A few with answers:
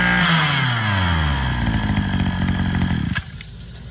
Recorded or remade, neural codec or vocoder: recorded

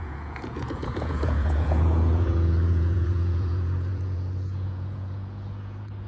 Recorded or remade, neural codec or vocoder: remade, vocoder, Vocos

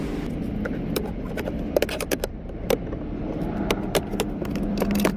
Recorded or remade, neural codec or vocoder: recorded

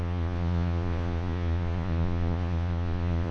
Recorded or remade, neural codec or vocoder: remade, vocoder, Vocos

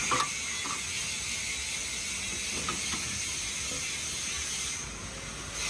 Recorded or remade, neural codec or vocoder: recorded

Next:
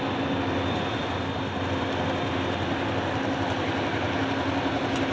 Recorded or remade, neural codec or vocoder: recorded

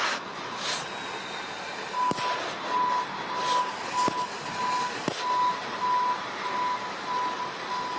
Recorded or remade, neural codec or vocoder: recorded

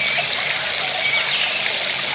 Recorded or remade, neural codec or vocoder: recorded